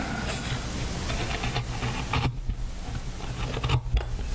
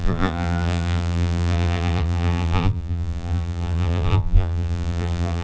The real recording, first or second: first